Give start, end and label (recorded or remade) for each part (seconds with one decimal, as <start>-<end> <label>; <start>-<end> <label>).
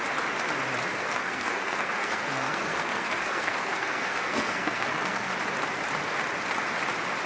0.0-0.9 recorded; 0.9-5.3 remade; 5.3-7.3 recorded